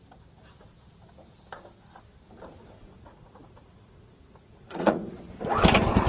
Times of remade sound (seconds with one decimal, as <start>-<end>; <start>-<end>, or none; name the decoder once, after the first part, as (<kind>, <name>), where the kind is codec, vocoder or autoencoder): 2.8-5.2 (vocoder, Vocos)